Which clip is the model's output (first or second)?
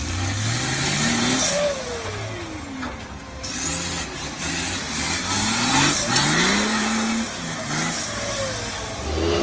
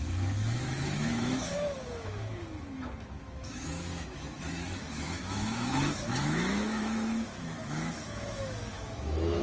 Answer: second